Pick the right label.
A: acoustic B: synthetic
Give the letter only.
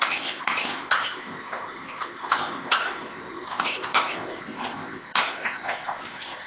B